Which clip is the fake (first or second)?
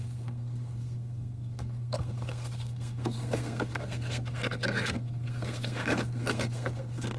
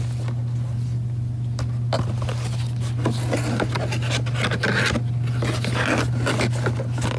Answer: first